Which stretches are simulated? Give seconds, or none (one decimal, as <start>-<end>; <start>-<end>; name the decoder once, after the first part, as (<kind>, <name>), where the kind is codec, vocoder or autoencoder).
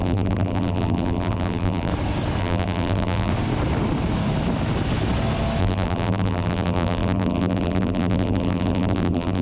0.0-1.9 (vocoder, BigVGAN v2); 2.4-3.3; 5.6-9.4